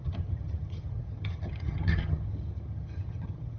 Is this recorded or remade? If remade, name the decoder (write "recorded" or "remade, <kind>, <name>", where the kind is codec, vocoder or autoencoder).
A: remade, vocoder, HiFi-GAN